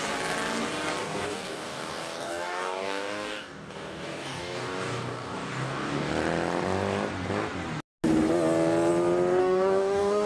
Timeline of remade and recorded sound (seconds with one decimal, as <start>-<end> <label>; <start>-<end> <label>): 0.0-1.0 recorded; 1.0-6.1 remade; 6.1-9.4 recorded; 9.4-10.3 remade